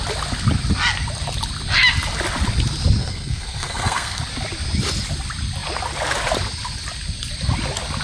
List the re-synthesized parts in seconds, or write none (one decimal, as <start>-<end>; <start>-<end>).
3.0-4.2